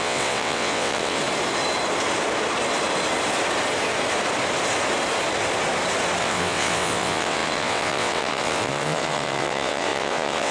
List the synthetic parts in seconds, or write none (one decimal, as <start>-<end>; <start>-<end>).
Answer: 0.0-1.2; 6.2-10.5